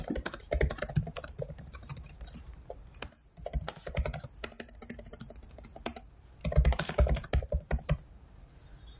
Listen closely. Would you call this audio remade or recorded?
remade